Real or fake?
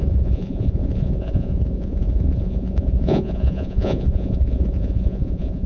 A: fake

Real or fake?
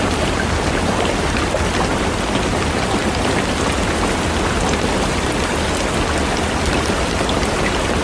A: real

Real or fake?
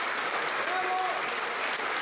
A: real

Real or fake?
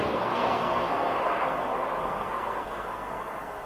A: fake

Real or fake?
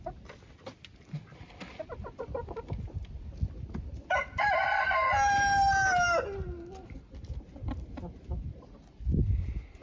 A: real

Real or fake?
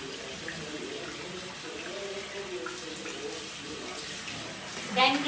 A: real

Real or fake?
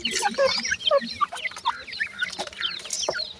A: real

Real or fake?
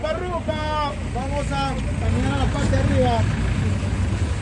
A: real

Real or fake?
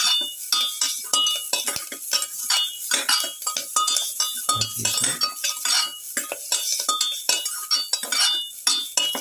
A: real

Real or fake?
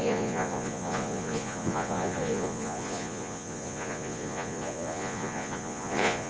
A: fake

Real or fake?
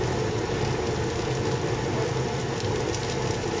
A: real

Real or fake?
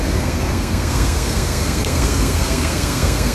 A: fake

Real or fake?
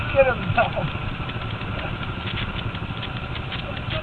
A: real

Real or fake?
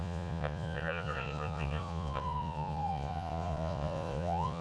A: fake